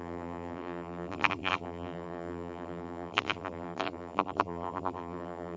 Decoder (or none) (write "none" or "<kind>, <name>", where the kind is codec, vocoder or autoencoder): vocoder, BigVGAN v2